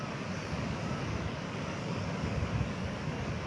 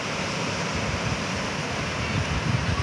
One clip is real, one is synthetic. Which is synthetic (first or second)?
first